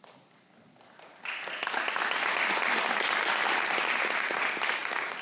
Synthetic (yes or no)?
no